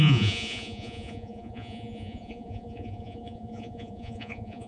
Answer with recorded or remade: remade